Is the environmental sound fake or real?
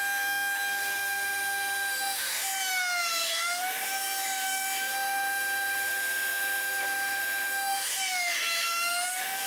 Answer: fake